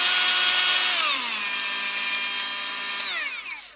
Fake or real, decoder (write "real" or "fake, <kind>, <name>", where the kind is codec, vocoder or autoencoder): real